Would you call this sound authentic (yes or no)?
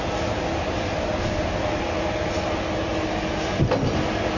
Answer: yes